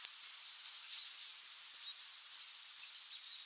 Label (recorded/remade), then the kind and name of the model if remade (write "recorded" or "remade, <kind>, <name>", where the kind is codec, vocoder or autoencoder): recorded